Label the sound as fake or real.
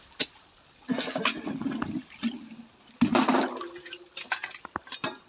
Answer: real